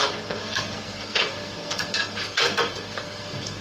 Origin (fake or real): fake